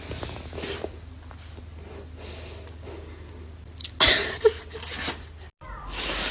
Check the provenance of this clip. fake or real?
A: real